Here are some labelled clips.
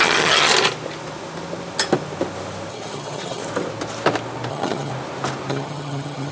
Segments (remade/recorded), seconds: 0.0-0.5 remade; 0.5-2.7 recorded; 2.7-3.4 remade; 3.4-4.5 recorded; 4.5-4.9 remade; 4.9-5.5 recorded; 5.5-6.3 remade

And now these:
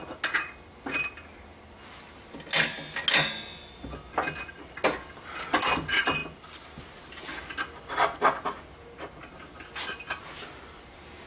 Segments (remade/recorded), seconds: 0.0-11.3 recorded

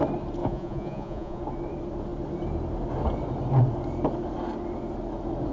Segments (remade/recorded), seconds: 0.0-0.4 recorded; 0.4-1.4 remade; 1.4-5.5 recorded

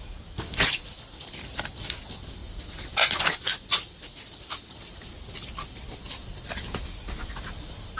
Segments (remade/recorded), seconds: 0.0-8.0 recorded